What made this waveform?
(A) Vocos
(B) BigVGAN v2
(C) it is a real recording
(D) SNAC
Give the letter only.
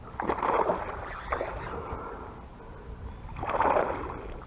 C